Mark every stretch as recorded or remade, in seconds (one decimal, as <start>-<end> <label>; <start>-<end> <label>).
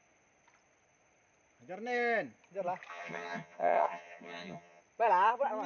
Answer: 0.0-2.9 recorded; 2.9-4.8 remade; 4.8-5.7 recorded